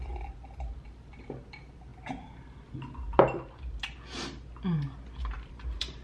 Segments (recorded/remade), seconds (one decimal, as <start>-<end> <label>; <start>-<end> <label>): 0.0-1.9 remade; 1.9-5.5 recorded; 5.5-6.0 remade